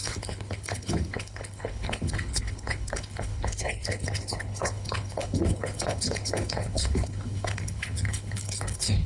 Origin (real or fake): fake